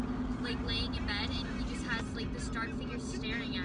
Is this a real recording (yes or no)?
yes